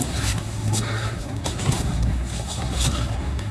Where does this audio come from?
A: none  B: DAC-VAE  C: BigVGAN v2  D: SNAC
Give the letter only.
D